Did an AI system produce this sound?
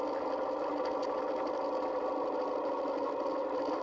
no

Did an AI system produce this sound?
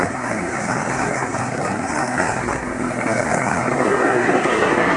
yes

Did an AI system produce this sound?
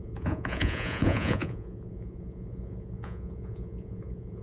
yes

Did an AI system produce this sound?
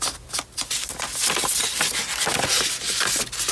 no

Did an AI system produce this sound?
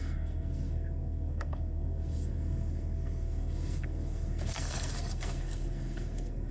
yes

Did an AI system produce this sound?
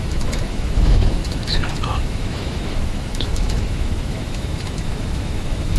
yes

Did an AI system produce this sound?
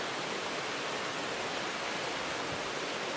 no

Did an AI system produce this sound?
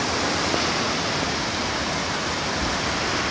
no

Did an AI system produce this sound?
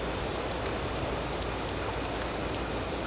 no